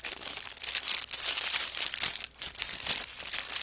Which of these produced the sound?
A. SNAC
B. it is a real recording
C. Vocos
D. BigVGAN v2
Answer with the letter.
D